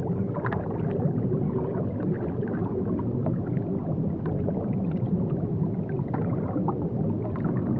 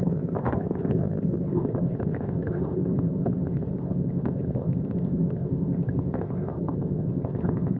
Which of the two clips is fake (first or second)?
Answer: second